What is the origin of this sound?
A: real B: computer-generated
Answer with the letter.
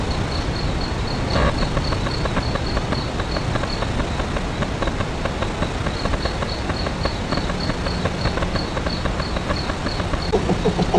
A